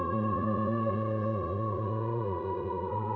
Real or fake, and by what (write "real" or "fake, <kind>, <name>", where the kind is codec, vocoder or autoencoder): fake, vocoder, Vocos